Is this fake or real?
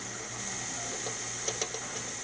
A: real